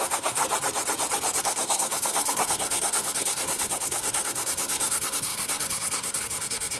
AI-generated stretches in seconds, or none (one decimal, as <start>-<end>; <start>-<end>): 0.0-0.4; 1.4-6.8